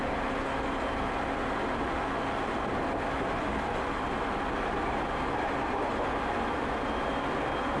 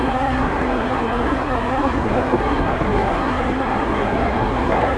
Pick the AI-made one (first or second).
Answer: second